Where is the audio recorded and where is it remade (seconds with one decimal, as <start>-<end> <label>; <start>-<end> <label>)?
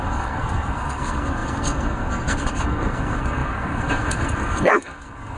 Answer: 0.0-5.4 remade